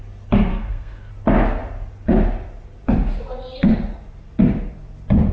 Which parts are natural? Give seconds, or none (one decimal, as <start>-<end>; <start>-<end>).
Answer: 0.0-0.5; 1.1-5.3